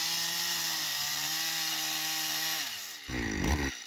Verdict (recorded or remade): remade